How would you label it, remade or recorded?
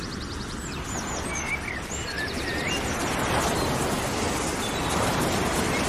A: recorded